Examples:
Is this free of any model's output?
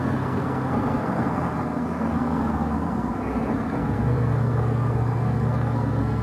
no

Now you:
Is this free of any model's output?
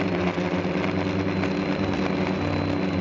yes